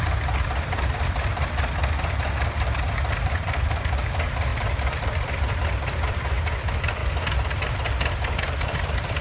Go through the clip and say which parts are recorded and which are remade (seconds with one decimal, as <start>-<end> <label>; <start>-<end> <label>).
0.0-7.0 remade; 7.0-7.6 recorded; 7.6-9.2 remade